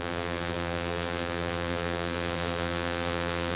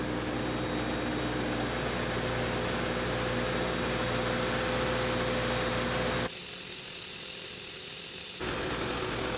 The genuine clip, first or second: second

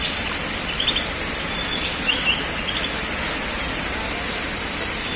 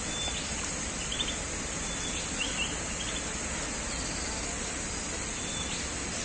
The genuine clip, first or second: second